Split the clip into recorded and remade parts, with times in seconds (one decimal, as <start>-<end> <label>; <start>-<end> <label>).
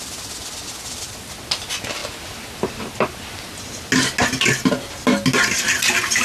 0.0-6.2 recorded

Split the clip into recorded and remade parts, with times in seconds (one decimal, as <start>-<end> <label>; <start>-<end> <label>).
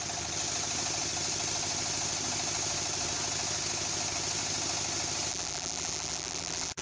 0.0-5.3 recorded; 5.3-6.8 remade